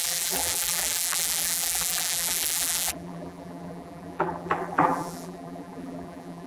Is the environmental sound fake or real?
fake